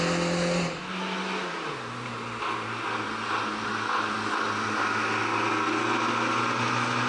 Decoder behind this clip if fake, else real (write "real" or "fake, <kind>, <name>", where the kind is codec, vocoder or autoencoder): real